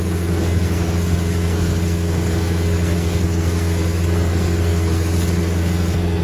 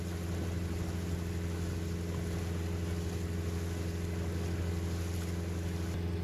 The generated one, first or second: first